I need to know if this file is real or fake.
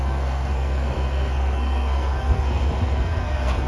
fake